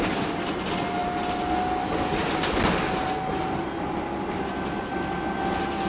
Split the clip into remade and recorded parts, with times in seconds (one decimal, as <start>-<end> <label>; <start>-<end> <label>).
0.0-5.9 recorded